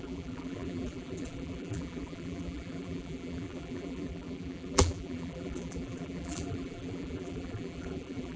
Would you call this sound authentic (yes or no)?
no